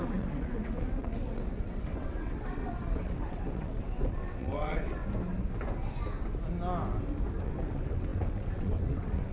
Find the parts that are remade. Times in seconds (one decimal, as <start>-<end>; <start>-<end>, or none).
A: 0.0-5.0; 7.4-9.3